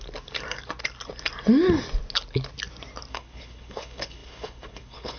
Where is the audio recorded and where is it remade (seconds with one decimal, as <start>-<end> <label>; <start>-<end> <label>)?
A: 0.0-3.1 recorded; 3.1-5.2 remade